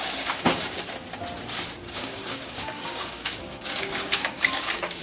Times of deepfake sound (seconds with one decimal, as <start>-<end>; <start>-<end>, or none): 0.0-0.8; 1.8-5.0